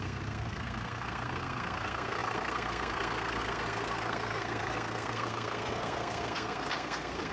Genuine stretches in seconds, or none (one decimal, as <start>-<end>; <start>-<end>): none